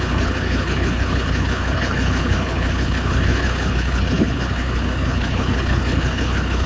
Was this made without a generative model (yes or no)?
no